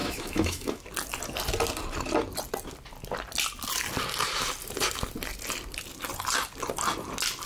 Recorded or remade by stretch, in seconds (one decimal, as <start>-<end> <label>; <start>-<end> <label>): 0.0-0.8 remade; 0.8-7.5 recorded